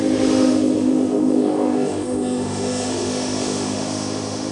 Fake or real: fake